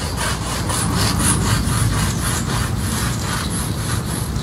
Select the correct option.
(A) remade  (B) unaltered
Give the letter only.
B